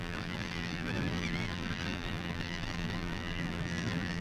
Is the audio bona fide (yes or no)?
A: no